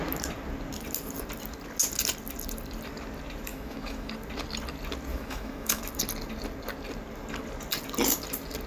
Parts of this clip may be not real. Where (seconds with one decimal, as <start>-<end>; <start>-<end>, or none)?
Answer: 3.5-4.1; 5.1-5.8